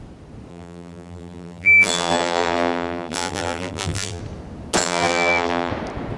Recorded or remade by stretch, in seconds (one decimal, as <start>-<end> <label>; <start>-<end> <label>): 0.0-0.5 recorded; 0.5-4.2 remade; 4.2-4.8 recorded; 4.8-5.7 remade; 5.7-6.2 recorded